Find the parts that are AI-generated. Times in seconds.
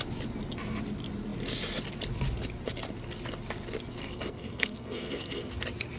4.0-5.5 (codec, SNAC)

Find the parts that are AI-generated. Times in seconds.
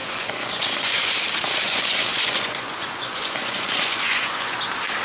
0.0-1.1 (vocoder, Vocos); 1.6-4.6